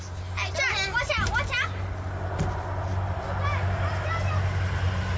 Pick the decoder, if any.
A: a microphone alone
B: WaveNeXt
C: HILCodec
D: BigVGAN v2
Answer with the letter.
A